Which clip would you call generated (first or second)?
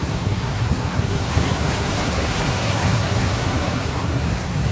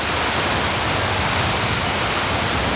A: first